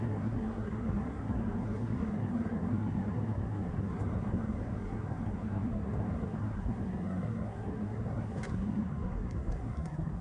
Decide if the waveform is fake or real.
fake